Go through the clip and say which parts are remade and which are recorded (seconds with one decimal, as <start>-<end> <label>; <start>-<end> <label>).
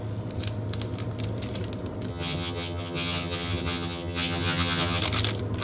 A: 0.0-2.1 recorded; 2.1-5.0 remade; 5.0-5.6 recorded